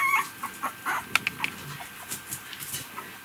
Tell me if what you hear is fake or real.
real